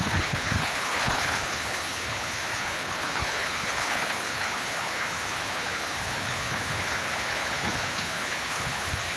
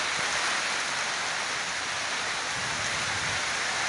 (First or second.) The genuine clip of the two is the second